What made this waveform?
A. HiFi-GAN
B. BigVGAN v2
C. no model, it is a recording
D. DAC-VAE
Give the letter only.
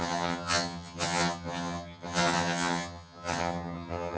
A